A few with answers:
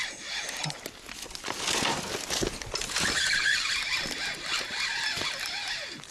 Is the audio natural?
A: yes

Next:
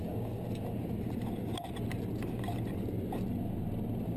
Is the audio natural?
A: yes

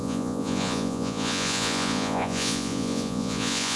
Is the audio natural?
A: no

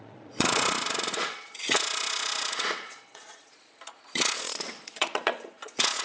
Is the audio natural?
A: no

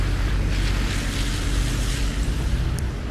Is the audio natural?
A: yes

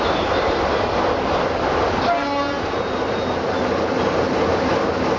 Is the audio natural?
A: yes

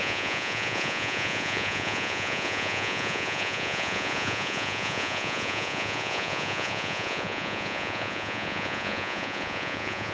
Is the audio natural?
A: no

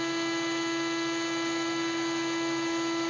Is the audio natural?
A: yes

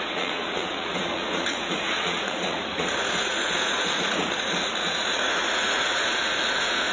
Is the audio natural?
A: no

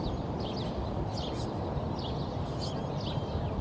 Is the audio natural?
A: yes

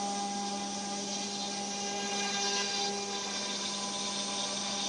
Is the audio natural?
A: yes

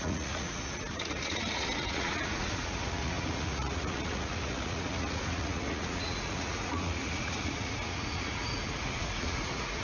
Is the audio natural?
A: no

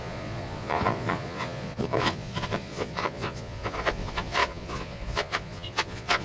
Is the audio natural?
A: no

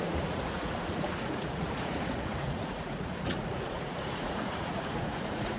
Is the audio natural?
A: no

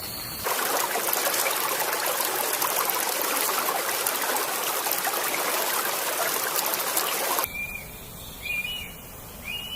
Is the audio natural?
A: yes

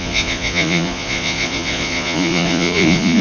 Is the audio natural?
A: no